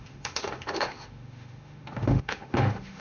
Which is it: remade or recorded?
remade